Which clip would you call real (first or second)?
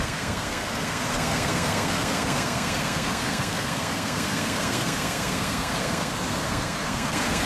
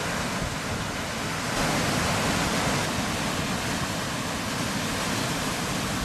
second